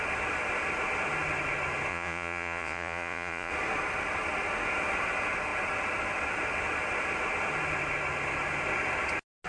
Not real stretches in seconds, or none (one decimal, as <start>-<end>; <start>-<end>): 1.9-3.5